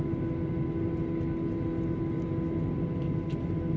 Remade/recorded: recorded